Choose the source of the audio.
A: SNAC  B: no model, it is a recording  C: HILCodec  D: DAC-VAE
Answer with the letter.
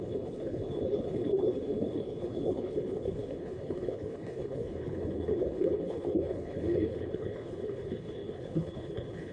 C